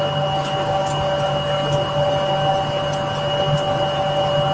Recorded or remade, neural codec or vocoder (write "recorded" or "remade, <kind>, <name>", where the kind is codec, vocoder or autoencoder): recorded